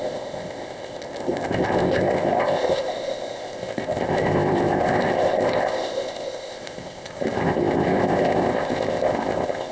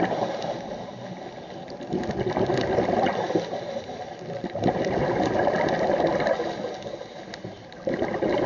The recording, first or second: second